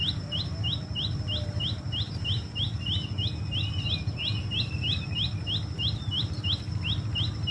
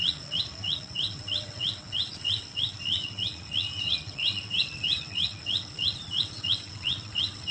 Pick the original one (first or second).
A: first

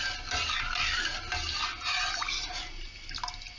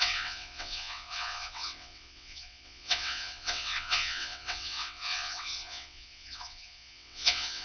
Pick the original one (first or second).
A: first